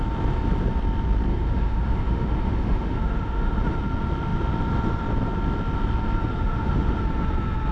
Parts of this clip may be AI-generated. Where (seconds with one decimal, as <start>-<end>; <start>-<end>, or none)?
1.3-3.6; 6.3-7.0